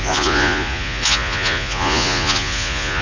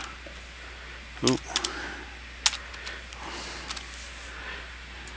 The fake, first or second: first